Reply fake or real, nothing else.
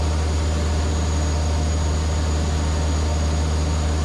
real